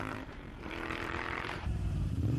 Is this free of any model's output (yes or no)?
no